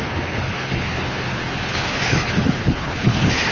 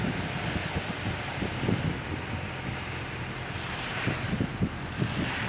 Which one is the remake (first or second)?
first